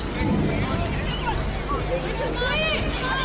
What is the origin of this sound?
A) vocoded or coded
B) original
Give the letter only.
B